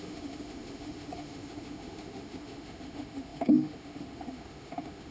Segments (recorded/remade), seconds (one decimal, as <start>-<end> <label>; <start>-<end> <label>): 0.0-5.1 remade